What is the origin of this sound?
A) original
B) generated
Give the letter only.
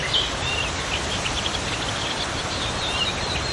B